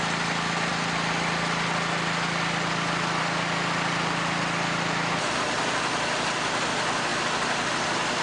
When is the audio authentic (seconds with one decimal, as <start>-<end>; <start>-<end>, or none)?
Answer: 0.0-8.2